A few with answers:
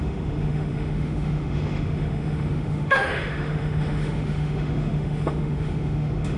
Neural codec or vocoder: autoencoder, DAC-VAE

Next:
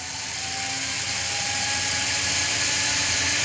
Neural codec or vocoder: none